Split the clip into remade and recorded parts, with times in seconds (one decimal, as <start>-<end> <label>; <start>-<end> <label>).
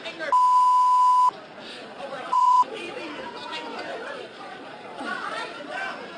0.0-1.7 recorded; 1.7-3.0 remade; 3.0-3.9 recorded; 3.9-5.8 remade; 5.8-6.2 recorded